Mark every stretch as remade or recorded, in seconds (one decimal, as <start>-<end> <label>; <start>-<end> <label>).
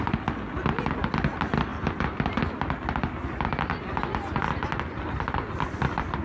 0.0-6.2 recorded